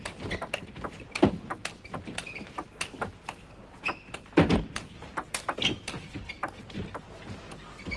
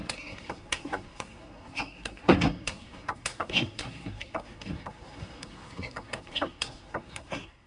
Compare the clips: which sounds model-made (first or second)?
second